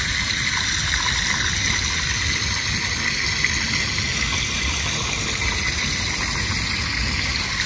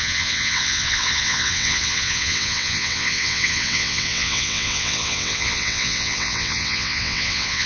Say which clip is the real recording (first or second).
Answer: first